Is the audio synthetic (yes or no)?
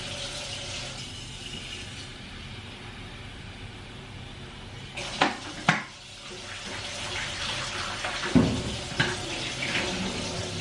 no